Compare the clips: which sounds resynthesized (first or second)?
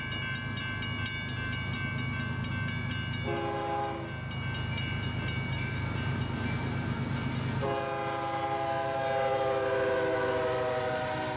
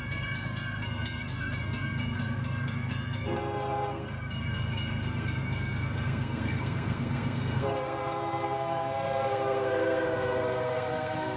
second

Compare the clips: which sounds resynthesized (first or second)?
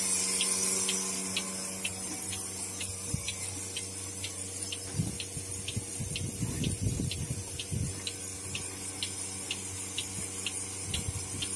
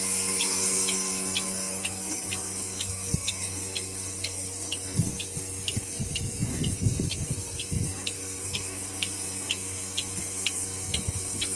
second